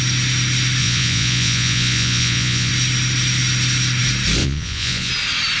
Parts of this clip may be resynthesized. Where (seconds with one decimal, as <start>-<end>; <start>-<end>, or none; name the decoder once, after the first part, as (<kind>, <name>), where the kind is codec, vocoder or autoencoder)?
0.8-2.7 (vocoder, Vocos); 4.4-5.1